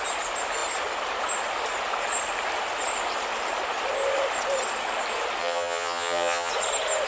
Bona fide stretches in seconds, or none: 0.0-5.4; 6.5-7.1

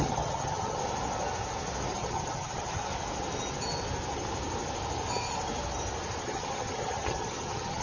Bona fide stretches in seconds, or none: 0.8-1.9; 2.9-6.2